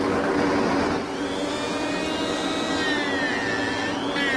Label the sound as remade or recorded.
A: recorded